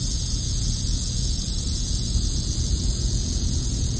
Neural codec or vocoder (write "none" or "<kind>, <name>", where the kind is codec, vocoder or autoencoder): vocoder, Vocos